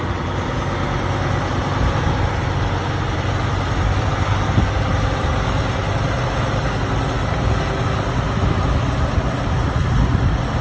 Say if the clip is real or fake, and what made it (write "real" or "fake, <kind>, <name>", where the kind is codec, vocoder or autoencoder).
real